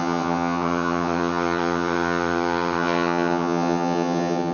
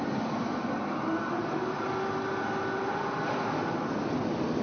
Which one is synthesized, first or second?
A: first